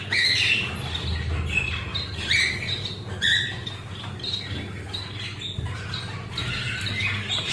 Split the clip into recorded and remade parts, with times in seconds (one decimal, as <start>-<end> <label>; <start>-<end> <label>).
0.0-7.5 recorded